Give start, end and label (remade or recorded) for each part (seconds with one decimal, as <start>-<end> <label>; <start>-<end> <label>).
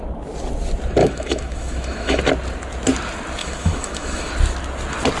0.0-1.0 recorded; 1.0-2.2 remade; 2.2-3.4 recorded; 3.4-4.3 remade; 4.3-5.2 recorded